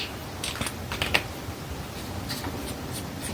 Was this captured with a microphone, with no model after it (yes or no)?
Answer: yes